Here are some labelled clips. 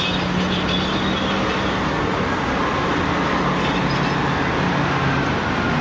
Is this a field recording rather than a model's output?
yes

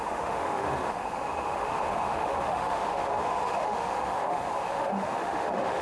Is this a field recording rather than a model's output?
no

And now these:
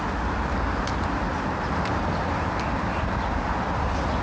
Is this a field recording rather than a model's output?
yes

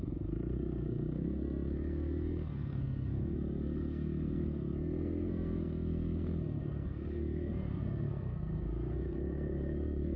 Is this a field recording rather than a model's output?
no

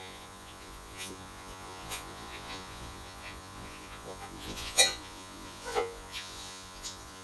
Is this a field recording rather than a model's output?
no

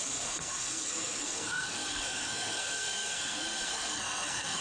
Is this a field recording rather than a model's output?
no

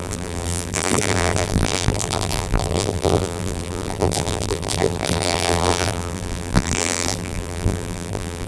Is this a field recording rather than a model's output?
no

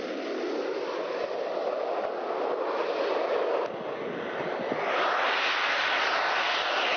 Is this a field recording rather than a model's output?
yes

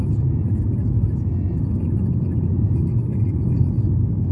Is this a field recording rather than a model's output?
yes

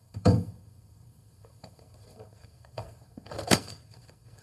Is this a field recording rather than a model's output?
no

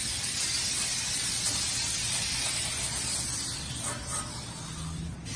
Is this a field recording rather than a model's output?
yes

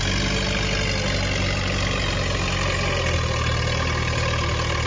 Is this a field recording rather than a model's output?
yes